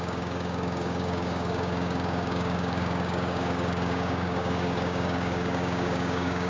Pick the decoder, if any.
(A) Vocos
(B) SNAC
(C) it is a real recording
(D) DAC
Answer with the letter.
D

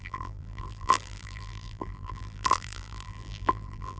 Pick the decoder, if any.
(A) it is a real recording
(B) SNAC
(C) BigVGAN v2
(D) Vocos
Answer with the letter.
C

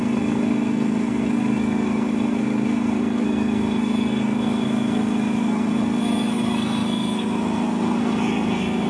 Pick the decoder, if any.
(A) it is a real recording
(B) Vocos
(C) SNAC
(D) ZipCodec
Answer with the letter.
C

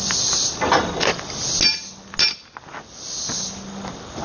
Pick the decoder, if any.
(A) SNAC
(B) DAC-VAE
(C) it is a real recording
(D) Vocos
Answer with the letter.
C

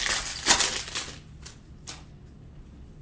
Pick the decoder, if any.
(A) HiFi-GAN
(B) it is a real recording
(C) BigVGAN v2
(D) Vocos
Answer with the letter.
B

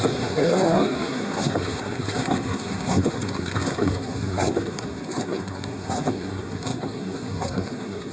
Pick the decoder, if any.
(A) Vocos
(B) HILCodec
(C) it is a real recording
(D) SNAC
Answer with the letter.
D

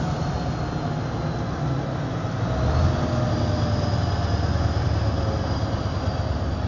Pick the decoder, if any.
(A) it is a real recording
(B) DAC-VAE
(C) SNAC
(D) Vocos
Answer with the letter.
A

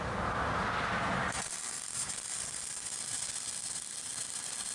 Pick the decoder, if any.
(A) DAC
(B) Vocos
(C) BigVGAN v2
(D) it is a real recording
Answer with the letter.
D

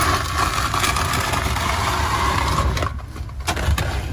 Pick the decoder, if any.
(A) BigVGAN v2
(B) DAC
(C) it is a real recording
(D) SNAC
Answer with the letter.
C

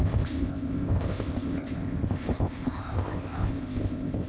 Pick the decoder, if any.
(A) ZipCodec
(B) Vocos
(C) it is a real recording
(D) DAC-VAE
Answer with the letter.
A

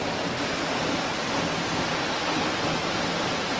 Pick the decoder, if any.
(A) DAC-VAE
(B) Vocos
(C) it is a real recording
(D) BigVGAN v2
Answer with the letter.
C